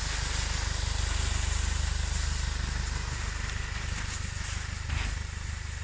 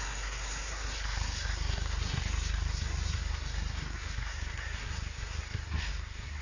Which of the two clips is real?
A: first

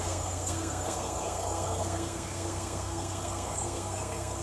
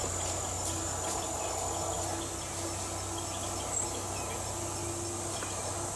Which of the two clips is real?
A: second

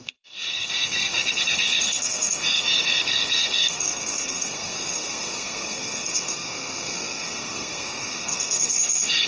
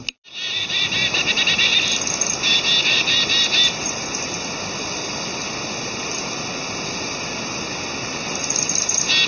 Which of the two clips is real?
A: second